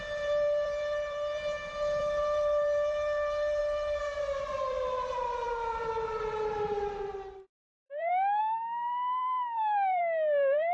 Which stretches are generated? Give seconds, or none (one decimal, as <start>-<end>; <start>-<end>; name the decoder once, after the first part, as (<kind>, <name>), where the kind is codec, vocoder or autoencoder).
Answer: 0.0-3.6 (vocoder, BigVGAN v2); 4.2-10.7